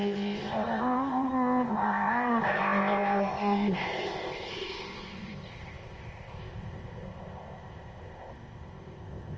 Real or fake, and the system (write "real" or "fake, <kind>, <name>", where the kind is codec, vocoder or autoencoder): fake, codec, ZipCodec